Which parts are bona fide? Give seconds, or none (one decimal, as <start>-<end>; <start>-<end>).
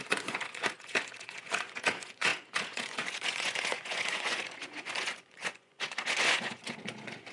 none